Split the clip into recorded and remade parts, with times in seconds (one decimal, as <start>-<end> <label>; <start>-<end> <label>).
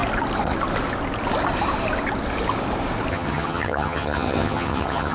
0.0-3.1 recorded; 3.1-5.1 remade